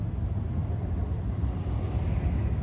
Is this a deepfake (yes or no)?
no